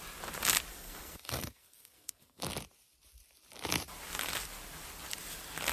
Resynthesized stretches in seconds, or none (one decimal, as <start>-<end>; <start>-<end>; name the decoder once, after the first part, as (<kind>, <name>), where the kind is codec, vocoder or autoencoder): 0.7-2.4 (codec, SNAC)